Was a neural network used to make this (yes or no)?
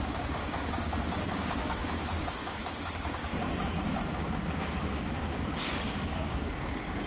yes